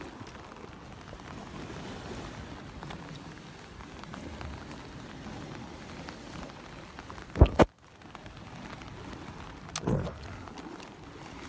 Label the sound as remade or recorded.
recorded